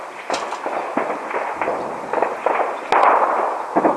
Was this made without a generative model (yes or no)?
yes